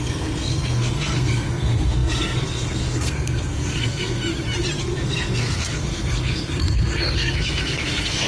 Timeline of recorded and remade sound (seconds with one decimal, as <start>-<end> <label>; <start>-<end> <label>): 0.0-4.2 remade; 4.2-4.8 recorded; 4.8-8.3 remade